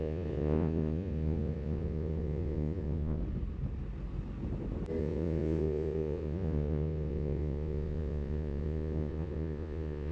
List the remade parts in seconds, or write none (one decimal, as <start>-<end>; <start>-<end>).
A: 0.0-3.2; 5.0-10.1

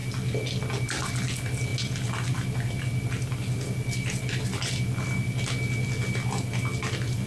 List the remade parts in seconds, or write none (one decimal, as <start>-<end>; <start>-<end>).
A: none

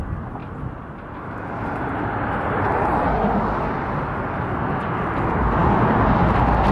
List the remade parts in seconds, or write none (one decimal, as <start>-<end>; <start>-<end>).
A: none

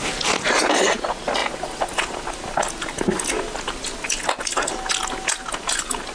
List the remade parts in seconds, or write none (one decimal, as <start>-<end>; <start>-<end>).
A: none

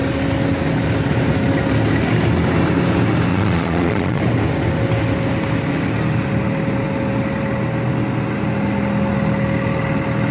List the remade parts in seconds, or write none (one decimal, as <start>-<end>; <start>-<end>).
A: 3.3-4.2